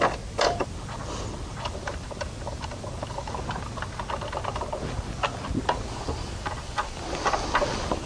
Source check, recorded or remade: recorded